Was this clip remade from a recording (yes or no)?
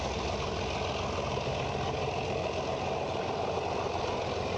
no